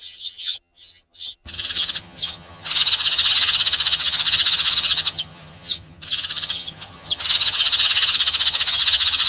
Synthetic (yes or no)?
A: yes